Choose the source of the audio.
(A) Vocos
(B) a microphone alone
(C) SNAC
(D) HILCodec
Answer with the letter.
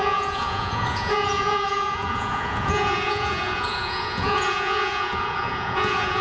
A